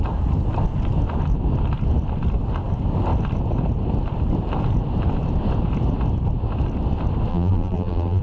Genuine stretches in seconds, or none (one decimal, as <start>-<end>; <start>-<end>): 0.0-7.3